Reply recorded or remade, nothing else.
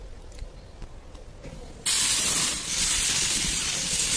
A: recorded